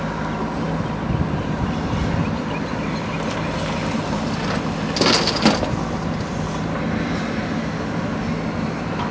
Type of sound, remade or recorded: recorded